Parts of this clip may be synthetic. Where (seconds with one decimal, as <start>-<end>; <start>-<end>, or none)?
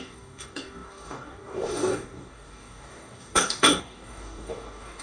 0.0-5.0